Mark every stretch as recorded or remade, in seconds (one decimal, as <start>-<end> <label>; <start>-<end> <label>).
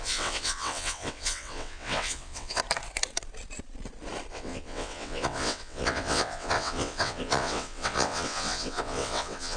0.0-2.6 remade; 2.6-4.3 recorded; 4.3-9.6 remade